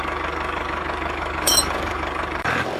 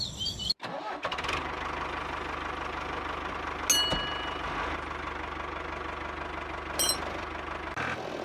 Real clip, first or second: second